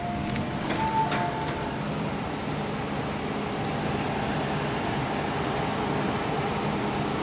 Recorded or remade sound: recorded